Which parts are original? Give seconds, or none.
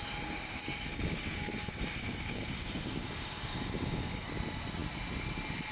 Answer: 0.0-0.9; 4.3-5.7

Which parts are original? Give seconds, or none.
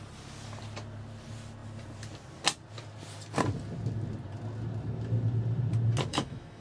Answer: 0.0-6.1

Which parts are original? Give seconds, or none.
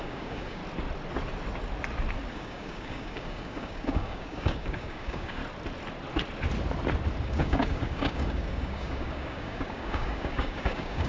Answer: 0.6-2.3; 5.4-7.2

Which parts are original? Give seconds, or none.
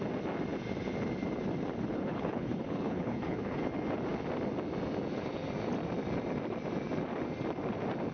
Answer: 0.0-1.9; 3.6-8.1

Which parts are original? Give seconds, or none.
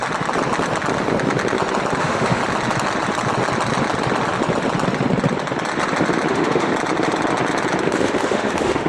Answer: 0.0-2.0; 2.4-6.3; 6.7-7.8